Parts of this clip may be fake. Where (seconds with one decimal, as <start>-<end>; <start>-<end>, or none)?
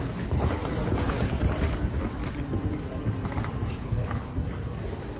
0.0-0.6; 3.7-4.3